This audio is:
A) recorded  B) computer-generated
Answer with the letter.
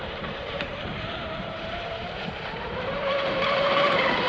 B